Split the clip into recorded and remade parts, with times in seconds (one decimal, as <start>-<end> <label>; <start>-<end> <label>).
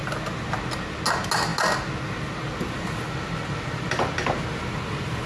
0.0-5.3 recorded